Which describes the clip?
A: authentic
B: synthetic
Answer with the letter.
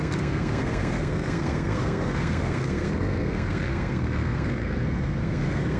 B